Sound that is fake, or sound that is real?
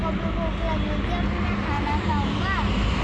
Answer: real